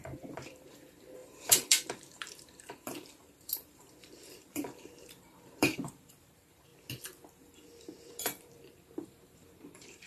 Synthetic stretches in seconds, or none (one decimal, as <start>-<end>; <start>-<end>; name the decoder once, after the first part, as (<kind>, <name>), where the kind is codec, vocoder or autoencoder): 0.0-6.7 (vocoder, BigVGAN v2); 7.3-10.1